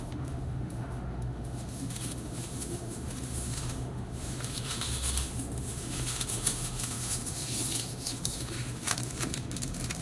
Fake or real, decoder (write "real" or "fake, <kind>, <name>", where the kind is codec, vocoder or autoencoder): fake, autoencoder, DAC-VAE